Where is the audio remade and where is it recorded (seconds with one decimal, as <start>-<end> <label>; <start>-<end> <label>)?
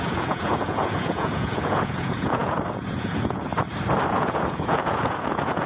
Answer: 0.0-3.5 remade; 3.5-4.1 recorded; 4.1-5.7 remade